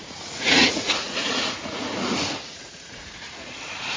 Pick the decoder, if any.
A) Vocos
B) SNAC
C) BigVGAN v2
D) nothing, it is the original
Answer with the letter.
A